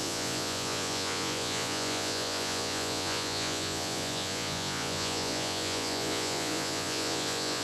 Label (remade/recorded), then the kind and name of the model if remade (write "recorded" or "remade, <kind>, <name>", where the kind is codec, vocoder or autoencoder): remade, vocoder, Vocos